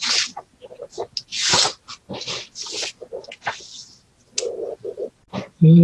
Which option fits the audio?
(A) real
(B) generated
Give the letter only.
A